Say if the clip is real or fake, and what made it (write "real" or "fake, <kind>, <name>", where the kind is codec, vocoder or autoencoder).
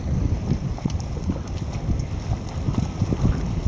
real